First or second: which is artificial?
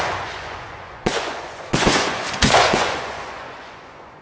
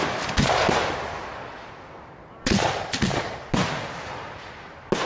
first